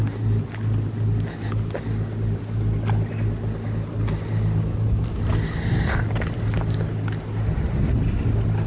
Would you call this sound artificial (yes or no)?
no